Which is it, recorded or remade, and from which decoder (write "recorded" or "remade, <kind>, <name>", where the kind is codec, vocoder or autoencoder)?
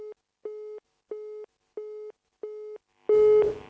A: recorded